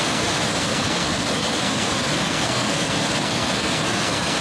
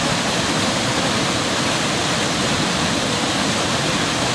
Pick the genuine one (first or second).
second